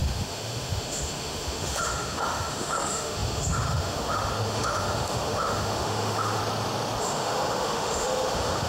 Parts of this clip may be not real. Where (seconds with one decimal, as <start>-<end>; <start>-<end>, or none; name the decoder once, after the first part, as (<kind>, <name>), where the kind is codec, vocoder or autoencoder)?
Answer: 0.0-6.4 (autoencoder, DAC-VAE); 7.0-8.7